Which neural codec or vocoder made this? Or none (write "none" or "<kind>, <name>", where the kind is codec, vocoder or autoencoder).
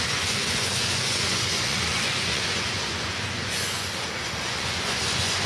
vocoder, Vocos